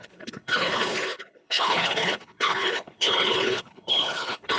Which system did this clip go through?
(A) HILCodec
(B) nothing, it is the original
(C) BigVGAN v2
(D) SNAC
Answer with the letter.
A